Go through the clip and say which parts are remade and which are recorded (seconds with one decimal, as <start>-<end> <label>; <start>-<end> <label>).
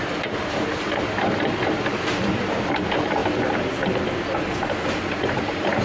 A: 0.0-3.2 remade; 3.2-5.2 recorded; 5.2-5.8 remade